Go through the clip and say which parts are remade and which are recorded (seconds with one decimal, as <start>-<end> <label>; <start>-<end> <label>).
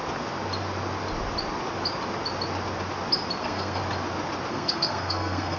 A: 0.0-3.4 recorded; 3.4-3.8 remade; 3.8-4.5 recorded; 4.5-5.6 remade